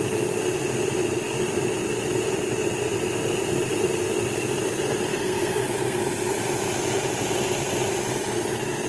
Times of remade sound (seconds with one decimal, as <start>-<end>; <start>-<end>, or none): 5.1-6.0